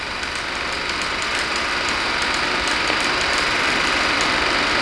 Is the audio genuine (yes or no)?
no